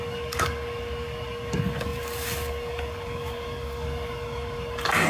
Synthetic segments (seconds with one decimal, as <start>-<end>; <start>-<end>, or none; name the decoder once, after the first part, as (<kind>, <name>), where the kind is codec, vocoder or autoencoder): 0.0-5.1 (codec, DAC)